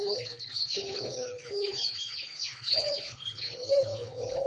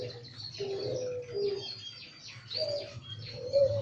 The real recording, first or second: second